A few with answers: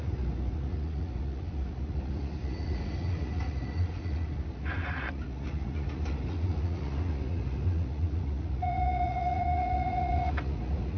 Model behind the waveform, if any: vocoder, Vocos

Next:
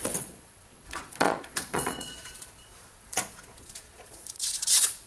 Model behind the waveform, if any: vocoder, Vocos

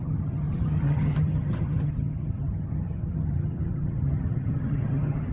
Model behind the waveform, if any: vocoder, HiFi-GAN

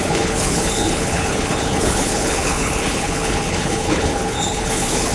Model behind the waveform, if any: codec, HILCodec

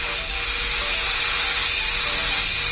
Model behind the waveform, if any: none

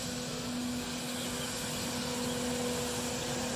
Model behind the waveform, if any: none